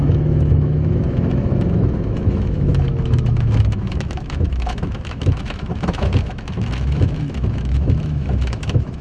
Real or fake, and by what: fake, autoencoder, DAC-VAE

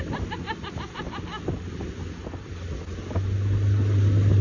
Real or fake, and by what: real